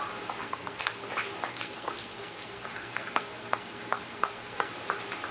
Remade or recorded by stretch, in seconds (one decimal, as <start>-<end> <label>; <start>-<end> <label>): 0.0-0.4 recorded; 0.4-1.1 remade; 1.1-1.5 recorded; 1.5-4.7 remade; 4.7-5.3 recorded